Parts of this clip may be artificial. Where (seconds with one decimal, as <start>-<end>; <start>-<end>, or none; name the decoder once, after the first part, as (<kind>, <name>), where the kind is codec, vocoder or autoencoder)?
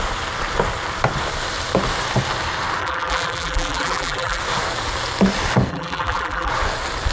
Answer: 2.8-4.4 (vocoder, BigVGAN v2); 5.7-6.5